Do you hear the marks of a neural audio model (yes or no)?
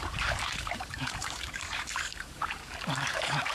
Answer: yes